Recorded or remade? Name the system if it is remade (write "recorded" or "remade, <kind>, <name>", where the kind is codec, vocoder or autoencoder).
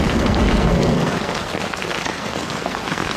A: remade, codec, SNAC